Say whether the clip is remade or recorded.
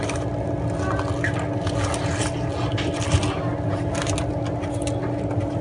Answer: recorded